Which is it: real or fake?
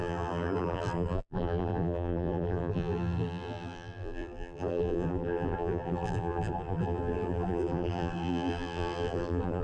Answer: fake